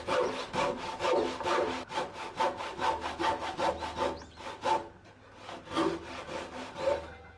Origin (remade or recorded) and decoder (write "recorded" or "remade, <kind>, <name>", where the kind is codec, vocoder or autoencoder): recorded